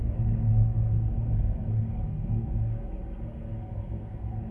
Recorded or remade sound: remade